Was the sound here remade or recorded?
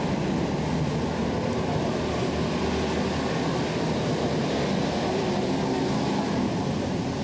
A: recorded